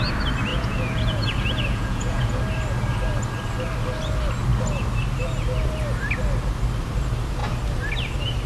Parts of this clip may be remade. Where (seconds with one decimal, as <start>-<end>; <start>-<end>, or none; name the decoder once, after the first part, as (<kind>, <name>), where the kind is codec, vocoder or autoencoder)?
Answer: 0.5-2.4 (vocoder, Vocos)